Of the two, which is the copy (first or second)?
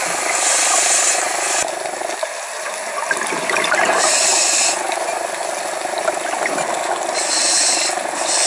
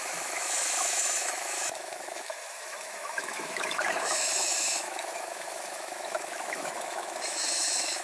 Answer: second